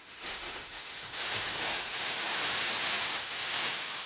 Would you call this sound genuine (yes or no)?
no